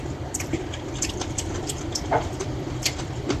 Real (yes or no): no